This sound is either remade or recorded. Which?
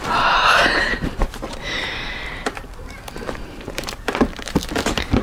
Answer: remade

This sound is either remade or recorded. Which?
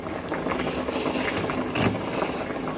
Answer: recorded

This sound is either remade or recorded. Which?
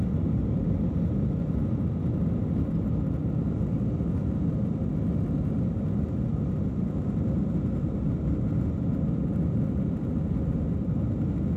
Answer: recorded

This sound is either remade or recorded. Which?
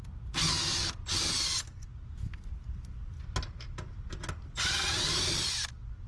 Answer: recorded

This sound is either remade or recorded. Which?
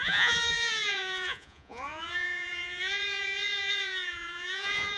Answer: remade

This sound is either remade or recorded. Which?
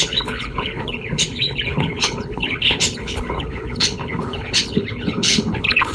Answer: remade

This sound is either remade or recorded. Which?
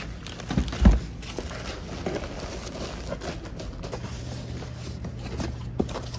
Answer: recorded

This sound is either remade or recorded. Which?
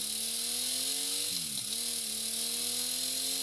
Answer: recorded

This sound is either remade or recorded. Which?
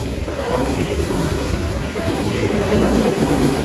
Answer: remade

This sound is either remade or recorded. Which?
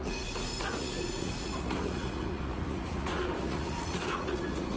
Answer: remade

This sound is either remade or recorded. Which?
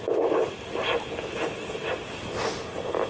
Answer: recorded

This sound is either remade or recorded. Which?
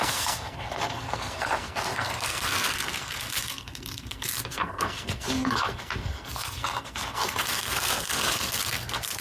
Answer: remade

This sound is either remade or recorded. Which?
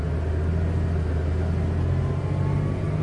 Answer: recorded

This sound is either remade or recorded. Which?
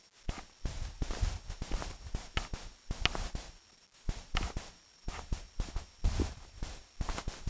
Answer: recorded